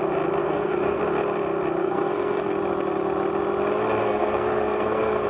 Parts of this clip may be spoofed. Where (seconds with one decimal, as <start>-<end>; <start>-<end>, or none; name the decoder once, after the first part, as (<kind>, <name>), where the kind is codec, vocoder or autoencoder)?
0.4-1.0 (codec, SNAC); 1.8-2.5; 4.0-5.3